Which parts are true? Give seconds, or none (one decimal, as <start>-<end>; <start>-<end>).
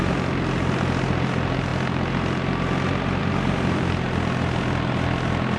0.0-5.6